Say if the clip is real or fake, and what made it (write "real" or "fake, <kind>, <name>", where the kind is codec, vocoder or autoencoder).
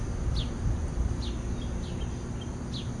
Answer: real